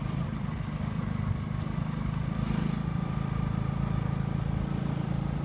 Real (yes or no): yes